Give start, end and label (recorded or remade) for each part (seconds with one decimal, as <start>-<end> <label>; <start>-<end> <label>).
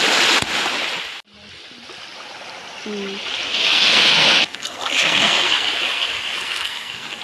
0.0-3.5 recorded; 3.5-7.2 remade